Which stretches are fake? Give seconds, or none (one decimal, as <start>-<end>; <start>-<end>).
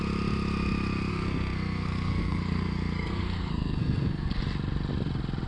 1.1-4.4